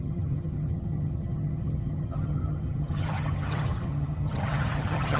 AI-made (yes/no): yes